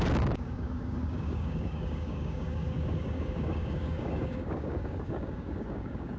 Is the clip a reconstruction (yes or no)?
yes